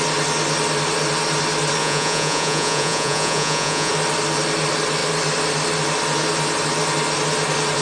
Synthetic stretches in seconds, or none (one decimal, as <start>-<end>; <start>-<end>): 1.8-3.9